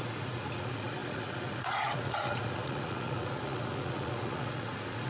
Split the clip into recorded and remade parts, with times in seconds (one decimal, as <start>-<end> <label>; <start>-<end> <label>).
0.0-5.1 remade